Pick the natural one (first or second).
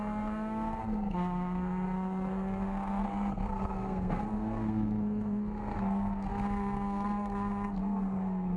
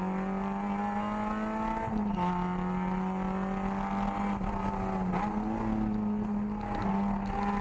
second